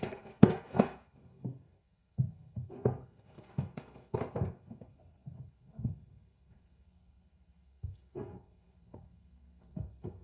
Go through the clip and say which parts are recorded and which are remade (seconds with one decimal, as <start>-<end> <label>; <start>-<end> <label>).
0.0-10.2 remade